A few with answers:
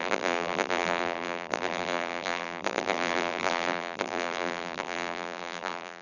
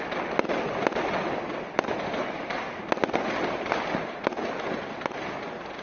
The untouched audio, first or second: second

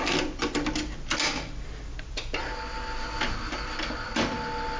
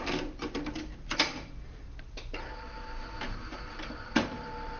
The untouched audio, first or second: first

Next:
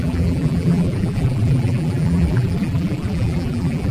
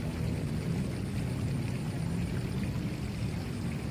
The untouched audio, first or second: second